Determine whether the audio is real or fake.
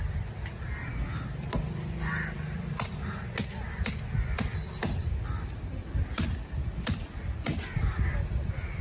real